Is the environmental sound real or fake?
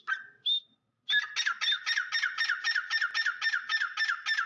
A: real